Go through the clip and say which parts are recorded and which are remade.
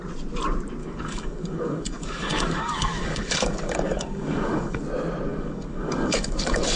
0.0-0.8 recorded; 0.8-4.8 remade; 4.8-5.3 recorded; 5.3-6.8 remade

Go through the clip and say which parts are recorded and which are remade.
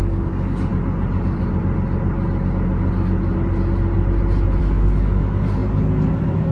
0.0-0.7 remade; 0.7-4.6 recorded; 4.6-6.5 remade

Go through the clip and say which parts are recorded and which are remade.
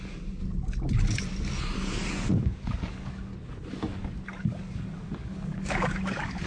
0.0-0.4 remade; 0.4-2.3 recorded; 2.3-3.3 remade; 3.3-4.4 recorded; 4.4-6.5 remade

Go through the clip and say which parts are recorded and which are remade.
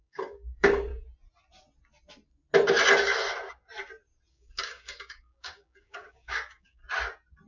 0.0-0.9 remade; 0.9-4.3 recorded; 4.3-6.8 remade; 6.8-7.5 recorded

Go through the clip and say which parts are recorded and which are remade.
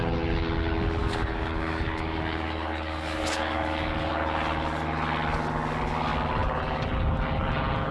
0.0-1.0 recorded; 1.0-4.1 remade; 4.1-7.9 recorded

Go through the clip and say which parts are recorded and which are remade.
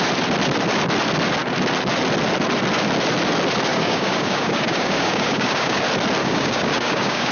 0.0-3.7 recorded; 3.7-5.8 remade; 5.8-6.2 recorded; 6.2-7.3 remade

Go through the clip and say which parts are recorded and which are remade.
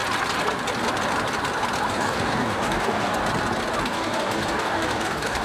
0.0-1.9 recorded; 1.9-3.2 remade; 3.2-3.8 recorded; 3.8-5.4 remade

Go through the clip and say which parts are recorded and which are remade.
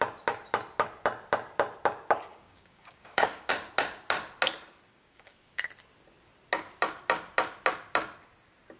0.0-2.3 recorded; 2.3-3.5 remade; 3.5-4.9 recorded; 4.9-5.7 remade; 5.7-8.8 recorded